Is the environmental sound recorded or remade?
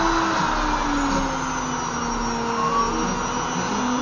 recorded